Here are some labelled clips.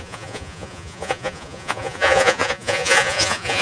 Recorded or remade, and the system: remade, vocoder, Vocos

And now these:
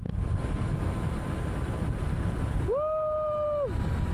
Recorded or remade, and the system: recorded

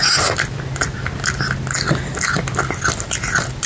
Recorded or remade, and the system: recorded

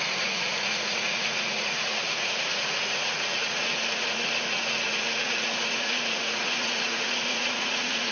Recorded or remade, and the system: remade, vocoder, Vocos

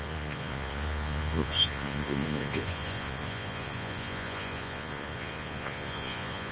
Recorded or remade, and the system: remade, vocoder, Vocos